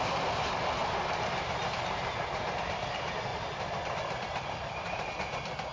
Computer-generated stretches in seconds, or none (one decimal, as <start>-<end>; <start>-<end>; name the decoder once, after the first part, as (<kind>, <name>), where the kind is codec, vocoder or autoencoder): 3.3-5.1 (vocoder, BigVGAN v2)